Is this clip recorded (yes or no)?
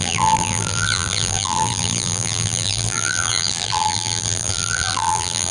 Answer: no